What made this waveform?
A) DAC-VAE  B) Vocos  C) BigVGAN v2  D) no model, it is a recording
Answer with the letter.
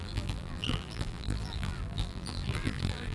C